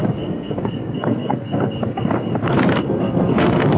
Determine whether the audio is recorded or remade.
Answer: remade